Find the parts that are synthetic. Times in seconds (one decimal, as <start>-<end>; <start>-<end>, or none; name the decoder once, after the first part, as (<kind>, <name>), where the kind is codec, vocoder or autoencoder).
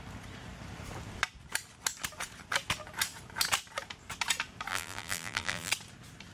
4.7-5.7 (vocoder, BigVGAN v2)